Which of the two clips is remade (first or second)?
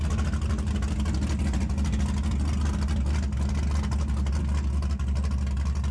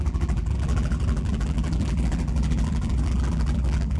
second